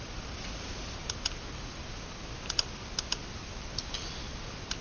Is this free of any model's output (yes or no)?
yes